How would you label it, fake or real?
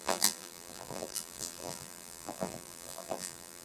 fake